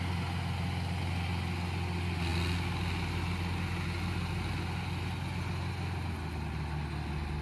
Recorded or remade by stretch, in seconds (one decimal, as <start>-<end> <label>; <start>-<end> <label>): 0.0-7.4 recorded